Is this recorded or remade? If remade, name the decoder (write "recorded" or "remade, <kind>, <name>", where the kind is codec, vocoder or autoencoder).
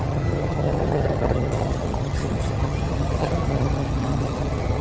remade, vocoder, HiFi-GAN